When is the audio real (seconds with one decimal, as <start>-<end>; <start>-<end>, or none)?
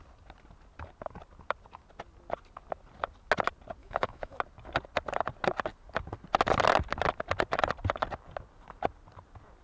0.0-3.8; 4.4-9.6